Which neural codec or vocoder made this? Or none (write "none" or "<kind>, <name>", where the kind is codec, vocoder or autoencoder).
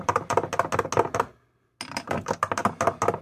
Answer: none